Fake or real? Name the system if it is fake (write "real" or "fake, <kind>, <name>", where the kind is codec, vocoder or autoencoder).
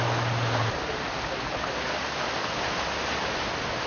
real